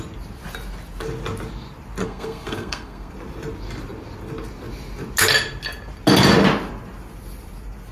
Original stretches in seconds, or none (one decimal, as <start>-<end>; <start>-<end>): 0.0-2.0; 3.1-7.9